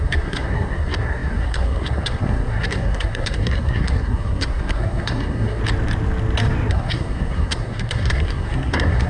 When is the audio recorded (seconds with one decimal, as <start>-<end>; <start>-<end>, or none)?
5.6-6.7